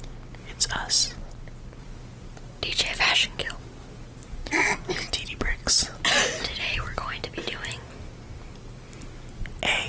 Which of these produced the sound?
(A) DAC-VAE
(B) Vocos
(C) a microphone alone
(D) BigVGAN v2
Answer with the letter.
C